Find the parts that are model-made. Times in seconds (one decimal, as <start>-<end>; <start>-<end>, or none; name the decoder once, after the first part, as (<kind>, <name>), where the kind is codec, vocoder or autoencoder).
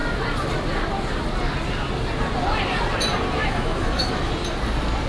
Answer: 3.4-4.1 (autoencoder, DAC-VAE)